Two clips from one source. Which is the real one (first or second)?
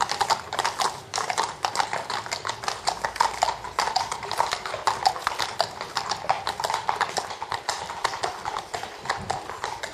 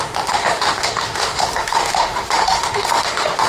first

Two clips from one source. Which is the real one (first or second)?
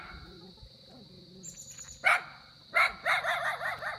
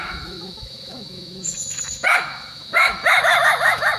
first